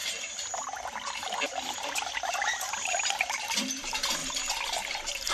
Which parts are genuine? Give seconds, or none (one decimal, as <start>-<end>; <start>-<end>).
4.2-5.3